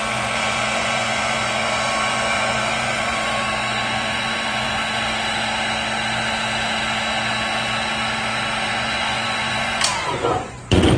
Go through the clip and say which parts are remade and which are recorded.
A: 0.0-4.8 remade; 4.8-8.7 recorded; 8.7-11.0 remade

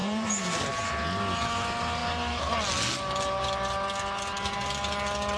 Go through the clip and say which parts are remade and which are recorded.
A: 0.0-5.4 recorded

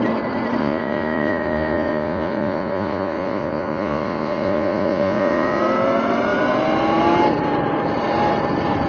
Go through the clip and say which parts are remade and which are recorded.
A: 0.0-0.6 recorded; 0.6-5.6 remade; 5.6-8.9 recorded

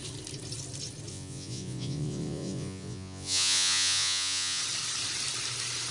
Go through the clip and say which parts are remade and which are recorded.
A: 0.0-1.1 recorded; 1.1-4.6 remade; 4.6-5.9 recorded